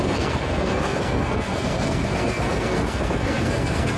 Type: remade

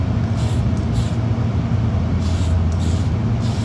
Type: recorded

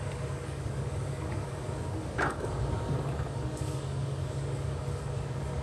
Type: remade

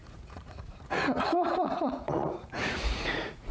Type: remade